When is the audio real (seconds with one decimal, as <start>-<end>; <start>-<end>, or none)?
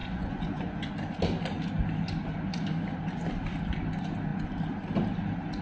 0.9-5.6